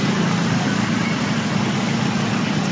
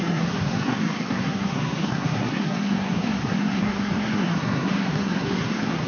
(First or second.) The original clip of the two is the first